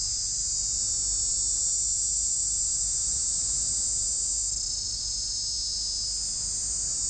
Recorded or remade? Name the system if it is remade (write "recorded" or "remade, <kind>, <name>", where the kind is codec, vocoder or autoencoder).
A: recorded